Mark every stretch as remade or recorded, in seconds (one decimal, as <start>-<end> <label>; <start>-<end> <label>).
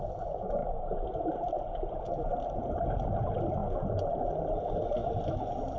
0.0-0.6 recorded; 0.6-1.5 remade; 1.5-5.8 recorded